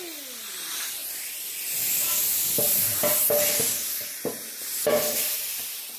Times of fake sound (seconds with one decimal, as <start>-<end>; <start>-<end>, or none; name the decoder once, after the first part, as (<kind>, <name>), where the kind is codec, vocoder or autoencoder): none